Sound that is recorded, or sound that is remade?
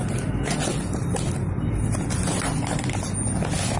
recorded